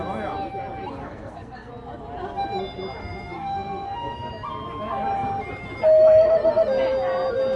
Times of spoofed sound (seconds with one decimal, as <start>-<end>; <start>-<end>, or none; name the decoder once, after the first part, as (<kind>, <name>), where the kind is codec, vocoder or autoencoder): 1.0-1.7 (codec, SNAC); 3.0-4.3